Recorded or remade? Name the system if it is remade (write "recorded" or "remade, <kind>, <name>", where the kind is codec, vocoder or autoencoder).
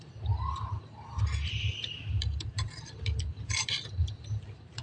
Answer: remade, vocoder, BigVGAN v2